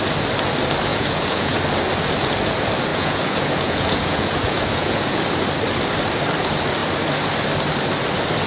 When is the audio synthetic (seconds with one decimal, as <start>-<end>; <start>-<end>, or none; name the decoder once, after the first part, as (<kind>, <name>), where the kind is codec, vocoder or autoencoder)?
0.9-1.6 (vocoder, Vocos); 2.9-5.2